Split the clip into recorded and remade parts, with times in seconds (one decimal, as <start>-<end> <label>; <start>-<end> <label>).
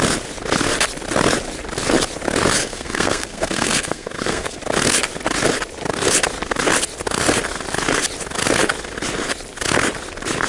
0.0-2.6 recorded; 2.6-4.6 remade; 4.6-10.5 recorded